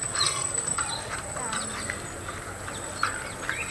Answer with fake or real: real